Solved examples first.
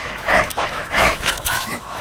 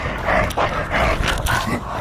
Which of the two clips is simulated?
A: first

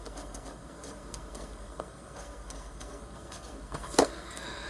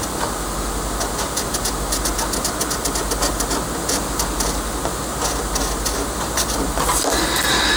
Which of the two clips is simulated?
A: first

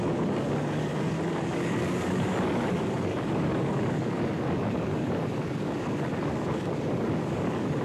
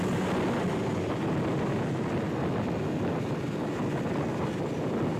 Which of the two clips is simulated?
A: first